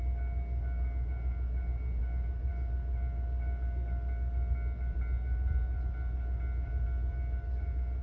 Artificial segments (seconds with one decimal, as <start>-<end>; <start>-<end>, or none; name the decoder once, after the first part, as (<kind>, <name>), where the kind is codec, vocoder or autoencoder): none

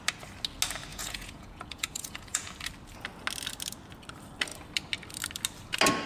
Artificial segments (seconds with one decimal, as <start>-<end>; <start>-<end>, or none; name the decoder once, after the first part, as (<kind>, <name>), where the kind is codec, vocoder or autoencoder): 0.9-2.5 (vocoder, Vocos)

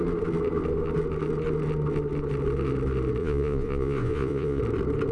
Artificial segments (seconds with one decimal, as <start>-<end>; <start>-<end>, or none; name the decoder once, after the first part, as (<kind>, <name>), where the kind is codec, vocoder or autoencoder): 3.2-4.6 (vocoder, Vocos)

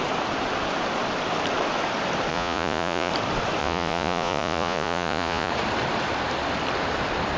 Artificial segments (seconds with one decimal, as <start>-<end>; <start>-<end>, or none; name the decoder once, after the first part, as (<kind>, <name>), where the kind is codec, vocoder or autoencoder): 2.3-3.1 (vocoder, Vocos); 3.6-5.5

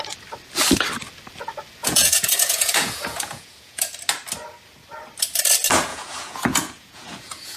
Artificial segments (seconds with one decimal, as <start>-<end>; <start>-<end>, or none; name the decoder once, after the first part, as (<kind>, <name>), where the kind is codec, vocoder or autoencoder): 1.8-3.8 (vocoder, Vocos); 5.9-7.6

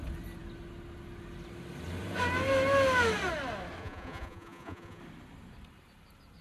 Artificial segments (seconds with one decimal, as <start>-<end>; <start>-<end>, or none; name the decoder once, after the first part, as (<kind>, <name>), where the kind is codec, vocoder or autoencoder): 3.8-5.0 (vocoder, Vocos)

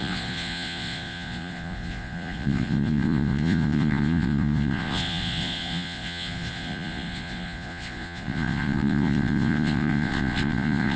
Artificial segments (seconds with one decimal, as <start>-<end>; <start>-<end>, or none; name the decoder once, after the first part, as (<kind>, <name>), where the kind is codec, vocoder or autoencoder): 0.0-11.0 (vocoder, Vocos)

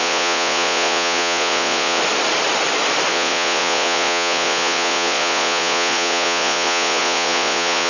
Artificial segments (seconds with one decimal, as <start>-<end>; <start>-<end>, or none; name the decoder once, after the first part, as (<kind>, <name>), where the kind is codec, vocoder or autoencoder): 0.0-2.0 (vocoder, Vocos); 3.1-7.9